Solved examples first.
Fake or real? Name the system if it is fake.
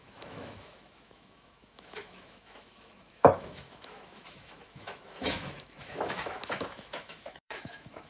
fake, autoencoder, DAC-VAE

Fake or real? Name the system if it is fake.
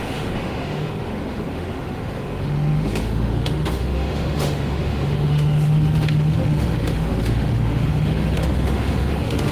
fake, autoencoder, DAC-VAE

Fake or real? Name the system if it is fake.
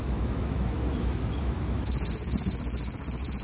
fake, autoencoder, DAC-VAE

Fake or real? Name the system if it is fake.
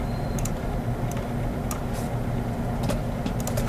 real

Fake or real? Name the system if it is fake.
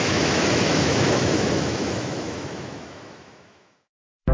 fake, autoencoder, DAC-VAE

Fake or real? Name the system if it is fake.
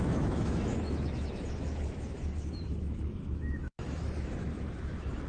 fake, autoencoder, DAC-VAE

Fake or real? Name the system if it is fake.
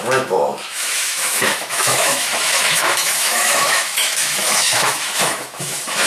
fake, autoencoder, DAC-VAE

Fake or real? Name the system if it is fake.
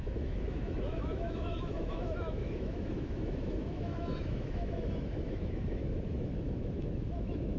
fake, autoencoder, DAC-VAE